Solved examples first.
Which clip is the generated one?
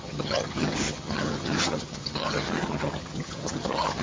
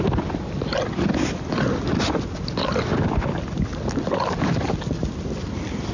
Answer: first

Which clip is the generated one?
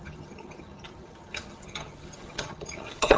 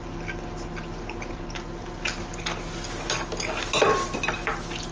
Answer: first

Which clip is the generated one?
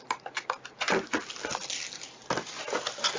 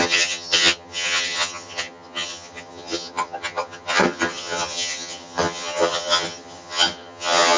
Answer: second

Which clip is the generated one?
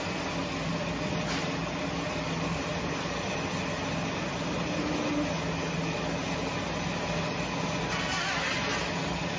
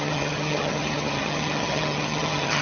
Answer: second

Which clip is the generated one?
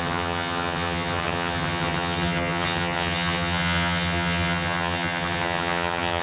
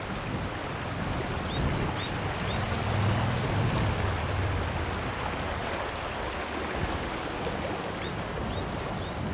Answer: first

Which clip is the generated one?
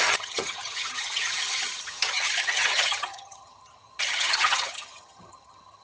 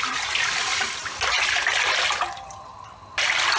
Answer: first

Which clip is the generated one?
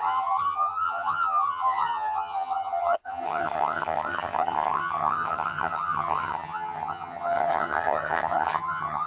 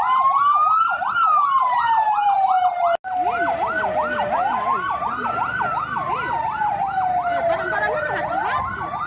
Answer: first